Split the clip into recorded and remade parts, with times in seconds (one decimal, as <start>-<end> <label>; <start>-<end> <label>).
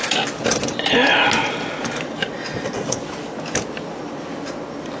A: 0.0-5.0 recorded